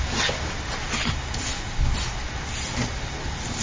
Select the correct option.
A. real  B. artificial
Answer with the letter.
A